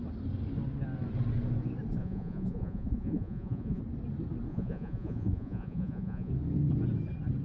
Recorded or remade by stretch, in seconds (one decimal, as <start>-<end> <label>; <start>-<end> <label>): 0.0-2.0 recorded; 2.0-3.8 remade; 3.8-4.5 recorded; 4.5-6.3 remade; 6.3-7.4 recorded